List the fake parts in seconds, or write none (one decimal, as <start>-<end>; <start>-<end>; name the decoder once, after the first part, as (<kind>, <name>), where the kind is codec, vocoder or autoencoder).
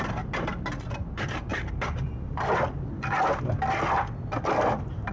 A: none